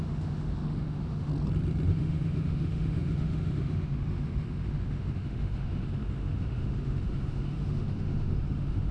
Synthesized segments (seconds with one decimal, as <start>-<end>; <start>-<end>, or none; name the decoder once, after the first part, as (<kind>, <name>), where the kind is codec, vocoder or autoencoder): 0.0-1.3 (autoencoder, DAC-VAE); 1.9-8.9